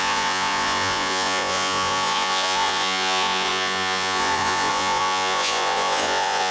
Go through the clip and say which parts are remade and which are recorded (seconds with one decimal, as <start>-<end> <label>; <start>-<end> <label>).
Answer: 0.0-6.5 remade